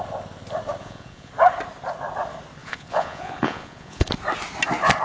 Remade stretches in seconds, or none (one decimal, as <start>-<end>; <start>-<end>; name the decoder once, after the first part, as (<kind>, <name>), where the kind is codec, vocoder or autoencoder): 0.8-1.3 (vocoder, Vocos); 2.6-4.1